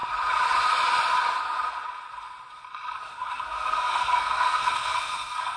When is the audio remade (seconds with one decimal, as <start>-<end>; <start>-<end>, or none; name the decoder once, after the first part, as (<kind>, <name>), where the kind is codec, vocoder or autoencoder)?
3.1-5.6 (codec, SNAC)